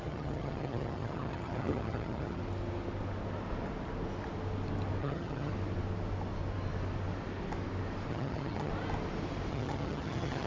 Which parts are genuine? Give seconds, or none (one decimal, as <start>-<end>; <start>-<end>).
2.4-5.0; 5.5-8.1; 8.7-9.5